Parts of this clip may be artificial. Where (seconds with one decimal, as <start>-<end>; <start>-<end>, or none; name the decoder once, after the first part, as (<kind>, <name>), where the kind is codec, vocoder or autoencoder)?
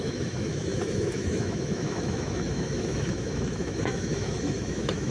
0.0-5.1 (autoencoder, DAC-VAE)